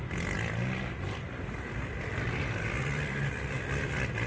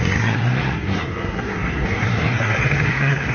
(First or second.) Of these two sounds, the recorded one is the first